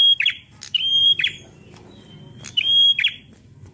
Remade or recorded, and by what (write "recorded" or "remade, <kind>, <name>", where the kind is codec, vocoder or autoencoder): remade, vocoder, BigVGAN v2